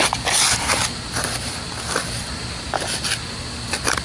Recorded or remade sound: recorded